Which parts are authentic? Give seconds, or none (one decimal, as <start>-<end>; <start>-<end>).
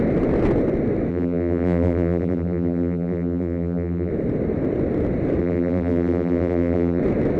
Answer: 0.0-1.1; 4.1-5.4; 7.0-7.4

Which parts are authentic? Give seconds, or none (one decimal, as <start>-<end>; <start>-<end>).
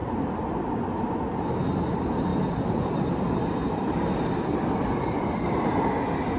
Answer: 0.0-2.3; 5.8-6.4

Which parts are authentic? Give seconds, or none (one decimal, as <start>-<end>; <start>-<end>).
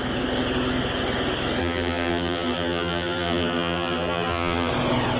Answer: 0.0-1.6; 4.7-5.2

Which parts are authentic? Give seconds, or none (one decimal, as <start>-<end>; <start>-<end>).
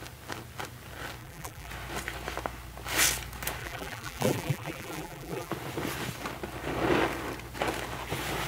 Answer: 0.0-1.2; 1.7-3.6; 5.5-8.5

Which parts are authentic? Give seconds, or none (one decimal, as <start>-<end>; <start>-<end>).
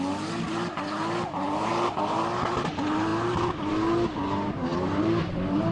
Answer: 0.0-4.7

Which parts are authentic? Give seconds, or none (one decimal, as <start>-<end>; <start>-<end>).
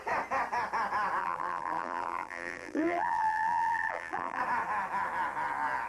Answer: 0.0-1.2; 4.4-5.9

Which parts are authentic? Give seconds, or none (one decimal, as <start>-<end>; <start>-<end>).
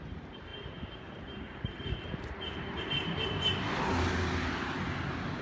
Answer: 0.0-0.5; 3.7-5.4